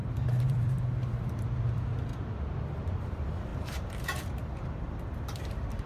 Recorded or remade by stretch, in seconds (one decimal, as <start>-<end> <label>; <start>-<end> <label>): 0.0-2.1 remade; 2.1-3.0 recorded; 3.0-5.9 remade